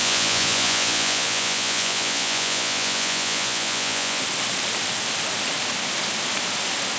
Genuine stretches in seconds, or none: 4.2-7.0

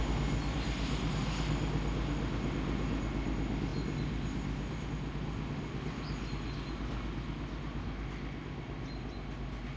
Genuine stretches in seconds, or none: 0.0-9.8